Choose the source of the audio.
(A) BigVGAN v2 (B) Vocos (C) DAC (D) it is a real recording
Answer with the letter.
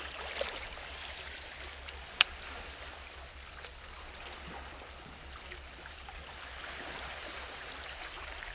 D